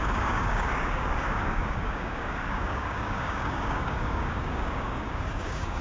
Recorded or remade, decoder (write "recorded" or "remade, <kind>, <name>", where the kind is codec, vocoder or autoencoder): remade, codec, DAC